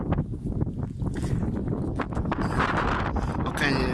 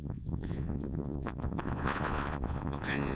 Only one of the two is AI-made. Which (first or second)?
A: second